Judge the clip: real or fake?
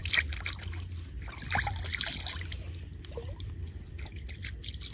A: real